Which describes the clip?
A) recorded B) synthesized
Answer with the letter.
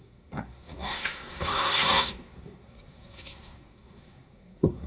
B